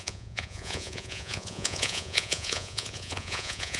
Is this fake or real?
fake